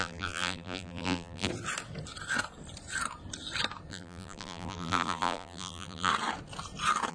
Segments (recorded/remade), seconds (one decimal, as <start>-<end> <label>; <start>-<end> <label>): 0.0-1.5 remade; 1.5-3.9 recorded; 3.9-6.1 remade; 6.1-7.1 recorded